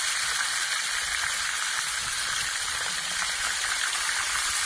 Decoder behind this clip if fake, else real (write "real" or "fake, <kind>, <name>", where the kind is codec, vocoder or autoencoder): real